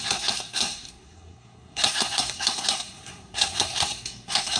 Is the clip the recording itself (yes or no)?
no